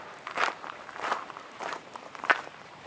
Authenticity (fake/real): fake